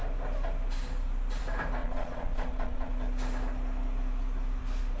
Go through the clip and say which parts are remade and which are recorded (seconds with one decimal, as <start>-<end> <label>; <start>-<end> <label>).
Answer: 0.0-1.8 recorded; 1.8-2.9 remade; 2.9-5.0 recorded